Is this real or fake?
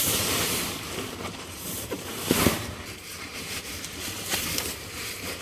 fake